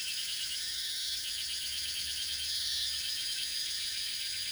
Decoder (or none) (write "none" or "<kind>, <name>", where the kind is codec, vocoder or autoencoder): autoencoder, DAC-VAE